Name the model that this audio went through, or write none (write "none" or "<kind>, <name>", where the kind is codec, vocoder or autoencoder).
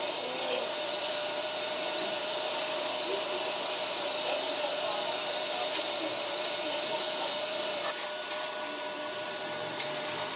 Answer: none